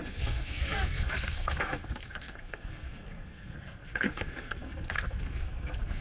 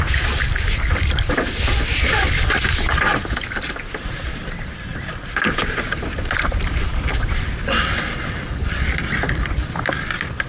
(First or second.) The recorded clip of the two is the second